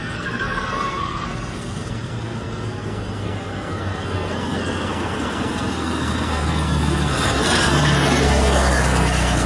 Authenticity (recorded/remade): remade